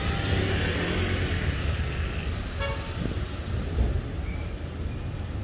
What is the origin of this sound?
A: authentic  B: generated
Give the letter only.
A